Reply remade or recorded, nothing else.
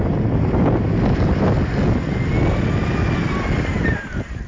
recorded